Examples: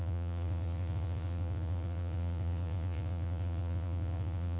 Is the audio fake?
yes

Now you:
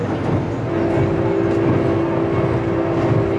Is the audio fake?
no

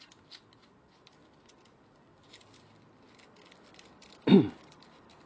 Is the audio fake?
no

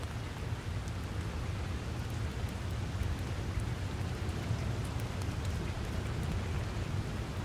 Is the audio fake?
no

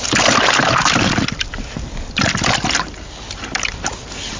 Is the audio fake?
no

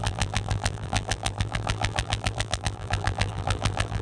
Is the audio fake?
yes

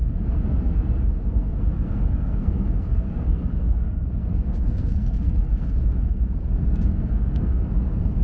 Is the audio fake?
yes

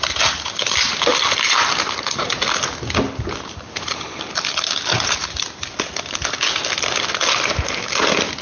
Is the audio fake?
no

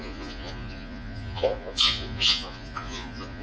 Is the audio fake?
yes